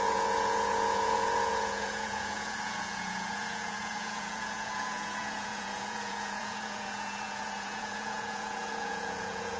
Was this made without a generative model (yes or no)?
no